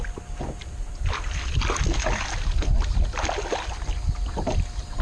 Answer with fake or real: real